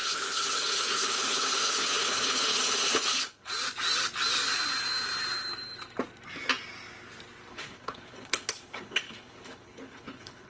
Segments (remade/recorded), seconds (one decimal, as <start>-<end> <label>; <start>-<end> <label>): 0.0-3.5 remade; 3.5-7.5 recorded; 7.5-10.5 remade